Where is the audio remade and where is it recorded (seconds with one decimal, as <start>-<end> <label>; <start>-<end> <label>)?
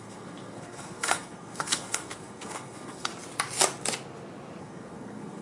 0.0-3.1 remade; 3.1-4.6 recorded; 4.6-5.4 remade